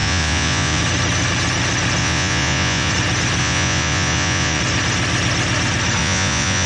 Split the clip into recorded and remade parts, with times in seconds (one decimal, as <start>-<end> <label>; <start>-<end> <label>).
0.0-0.8 remade; 0.8-2.0 recorded; 2.0-2.9 remade; 2.9-3.4 recorded; 3.4-4.6 remade; 4.6-6.0 recorded; 6.0-6.7 remade